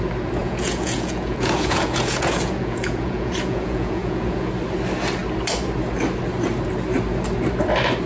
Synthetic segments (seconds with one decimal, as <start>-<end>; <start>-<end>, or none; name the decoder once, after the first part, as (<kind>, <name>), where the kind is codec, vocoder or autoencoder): 0.4-4.5 (vocoder, Vocos)